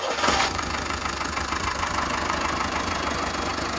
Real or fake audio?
fake